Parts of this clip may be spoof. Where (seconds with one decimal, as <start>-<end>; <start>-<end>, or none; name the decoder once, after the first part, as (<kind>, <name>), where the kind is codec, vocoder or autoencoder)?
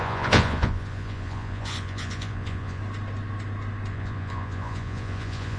0.0-2.8 (vocoder, Vocos); 3.9-5.6